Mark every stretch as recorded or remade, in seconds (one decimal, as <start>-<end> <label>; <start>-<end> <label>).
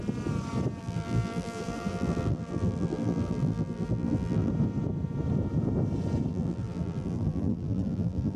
0.0-0.8 recorded; 0.8-4.5 remade; 4.5-6.3 recorded; 6.3-8.4 remade